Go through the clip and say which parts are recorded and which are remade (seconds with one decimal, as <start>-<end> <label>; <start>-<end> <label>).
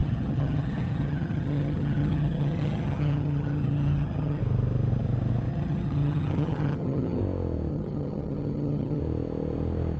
0.0-4.4 remade; 4.4-5.5 recorded; 5.5-7.2 remade; 7.2-7.7 recorded; 7.7-9.0 remade; 9.0-10.0 recorded